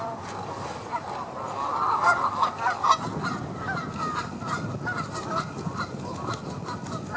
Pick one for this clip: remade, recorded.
recorded